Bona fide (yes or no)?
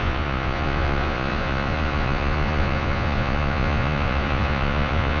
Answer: no